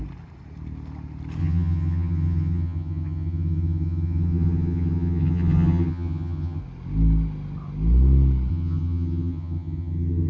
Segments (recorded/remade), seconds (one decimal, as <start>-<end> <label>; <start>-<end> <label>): 0.0-1.4 recorded; 1.4-6.6 remade; 6.6-8.5 recorded; 8.5-10.3 remade